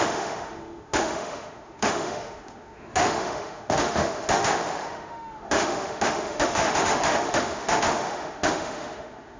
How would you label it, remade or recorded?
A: remade